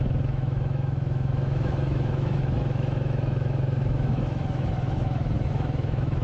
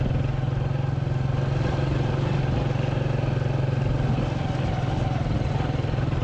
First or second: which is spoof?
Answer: first